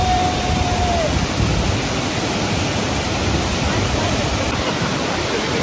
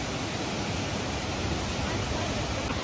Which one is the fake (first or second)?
first